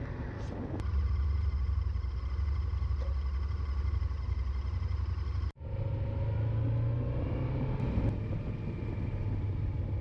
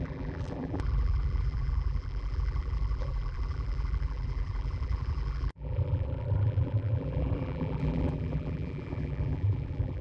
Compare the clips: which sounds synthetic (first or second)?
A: second